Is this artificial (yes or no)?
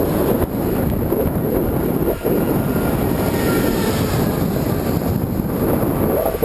no